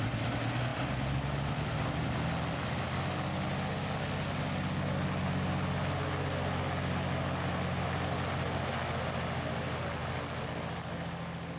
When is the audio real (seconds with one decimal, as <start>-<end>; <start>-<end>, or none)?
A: 0.0-11.6